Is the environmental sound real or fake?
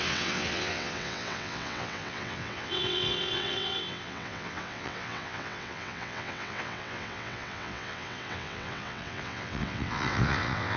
fake